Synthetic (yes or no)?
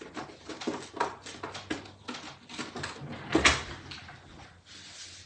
no